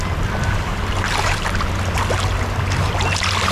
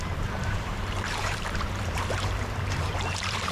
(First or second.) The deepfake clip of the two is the second